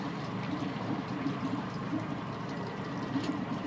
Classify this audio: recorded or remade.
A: remade